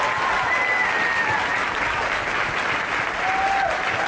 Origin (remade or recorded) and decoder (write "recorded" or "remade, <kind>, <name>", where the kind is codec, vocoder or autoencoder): recorded